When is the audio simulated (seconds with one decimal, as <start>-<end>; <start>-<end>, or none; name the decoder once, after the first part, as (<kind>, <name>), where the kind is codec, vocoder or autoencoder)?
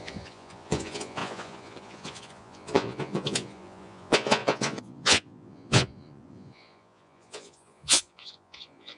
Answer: 0.0-9.0 (vocoder, Vocos)